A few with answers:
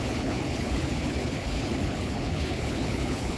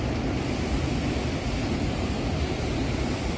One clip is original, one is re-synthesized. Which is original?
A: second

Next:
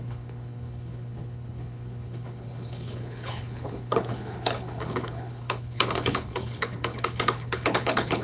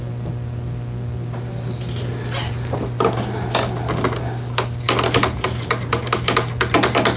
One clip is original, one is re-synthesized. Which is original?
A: second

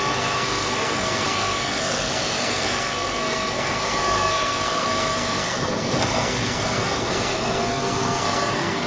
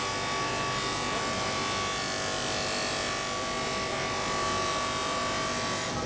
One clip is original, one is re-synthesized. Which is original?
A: second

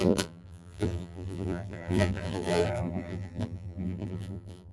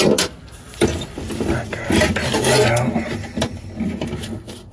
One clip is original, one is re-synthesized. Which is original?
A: second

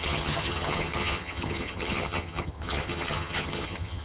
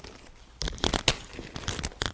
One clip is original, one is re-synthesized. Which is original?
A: second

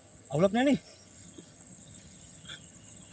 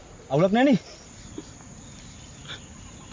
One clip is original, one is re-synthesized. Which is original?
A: second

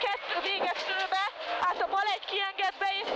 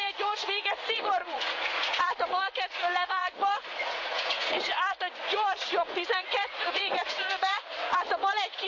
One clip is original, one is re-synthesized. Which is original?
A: first